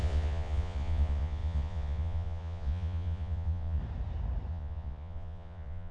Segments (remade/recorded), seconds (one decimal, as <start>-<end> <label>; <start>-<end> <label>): 0.0-3.8 remade; 3.8-4.5 recorded; 4.5-5.9 remade

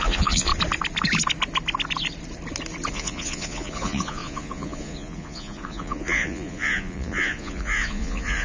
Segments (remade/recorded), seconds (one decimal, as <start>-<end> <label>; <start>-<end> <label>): 0.0-0.5 remade; 0.5-2.9 recorded; 2.9-8.4 remade

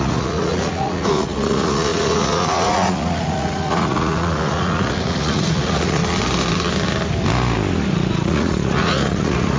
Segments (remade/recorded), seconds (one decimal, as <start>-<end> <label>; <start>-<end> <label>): 0.0-6.0 remade; 6.0-8.1 recorded; 8.1-9.6 remade

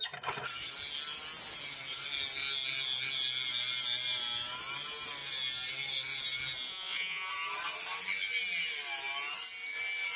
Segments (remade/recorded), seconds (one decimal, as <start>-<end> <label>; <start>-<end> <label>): 0.0-6.7 recorded; 6.7-7.3 remade; 7.3-10.2 recorded

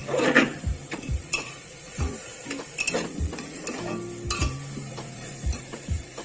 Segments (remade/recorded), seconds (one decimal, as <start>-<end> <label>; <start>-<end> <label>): 0.0-0.9 recorded; 0.9-2.3 remade; 2.3-3.1 recorded; 3.1-3.6 remade; 3.6-4.9 recorded; 4.9-6.2 remade

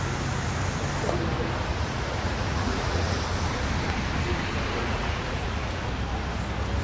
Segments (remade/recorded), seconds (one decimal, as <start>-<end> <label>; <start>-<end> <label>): 0.0-1.7 recorded; 1.7-3.2 remade; 3.2-4.8 recorded; 4.8-5.8 remade; 5.8-6.8 recorded

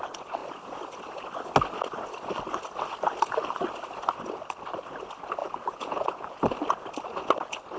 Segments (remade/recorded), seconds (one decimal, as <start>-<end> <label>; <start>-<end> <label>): 0.0-5.4 recorded; 5.4-6.4 remade; 6.4-7.8 recorded

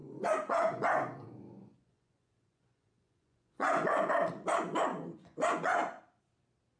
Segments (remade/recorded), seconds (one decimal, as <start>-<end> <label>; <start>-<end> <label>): 0.0-4.1 remade; 4.1-4.9 recorded; 4.9-6.0 remade; 6.0-6.8 recorded